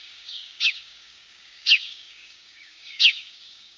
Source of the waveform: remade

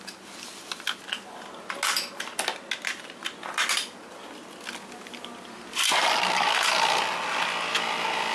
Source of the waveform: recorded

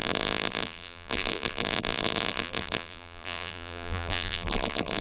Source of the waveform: remade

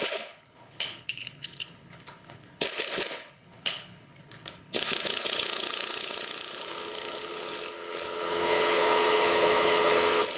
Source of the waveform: remade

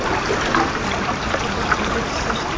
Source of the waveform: recorded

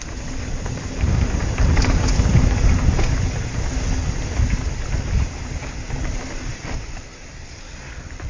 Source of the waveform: recorded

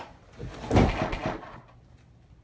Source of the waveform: recorded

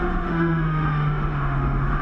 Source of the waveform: remade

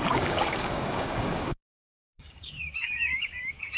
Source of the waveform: remade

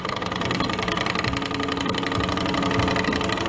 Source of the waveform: recorded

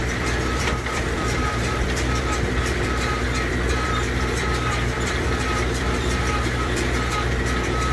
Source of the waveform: remade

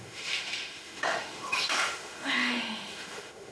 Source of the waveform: remade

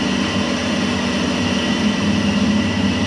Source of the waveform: recorded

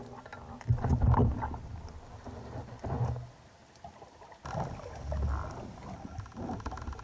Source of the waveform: recorded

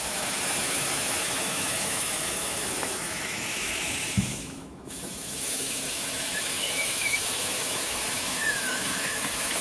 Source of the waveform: remade